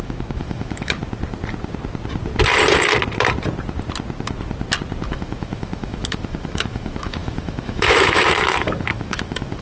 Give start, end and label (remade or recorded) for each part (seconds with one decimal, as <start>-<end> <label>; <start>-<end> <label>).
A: 0.0-1.0 remade; 1.0-5.1 recorded; 5.1-9.6 remade

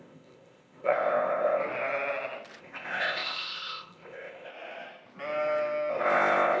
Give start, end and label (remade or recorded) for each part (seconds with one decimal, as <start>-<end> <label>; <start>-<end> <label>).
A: 0.0-1.6 remade; 1.6-2.6 recorded; 2.6-4.5 remade; 4.5-5.9 recorded; 5.9-6.6 remade

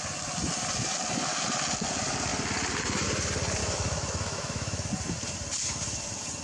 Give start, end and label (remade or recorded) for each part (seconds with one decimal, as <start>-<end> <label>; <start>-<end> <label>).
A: 0.0-3.6 recorded; 3.6-4.9 remade; 4.9-6.4 recorded